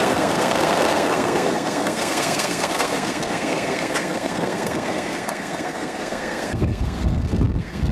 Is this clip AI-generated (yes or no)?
yes